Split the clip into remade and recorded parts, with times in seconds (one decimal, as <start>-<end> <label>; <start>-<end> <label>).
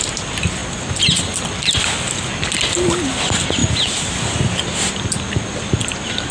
0.0-6.3 recorded